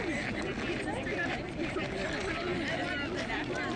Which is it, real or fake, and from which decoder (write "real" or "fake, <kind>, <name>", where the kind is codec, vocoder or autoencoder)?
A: real